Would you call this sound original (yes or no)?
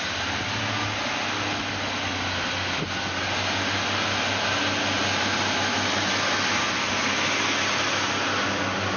yes